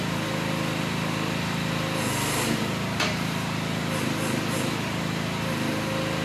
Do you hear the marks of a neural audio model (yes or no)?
no